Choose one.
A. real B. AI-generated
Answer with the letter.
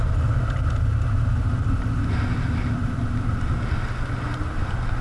A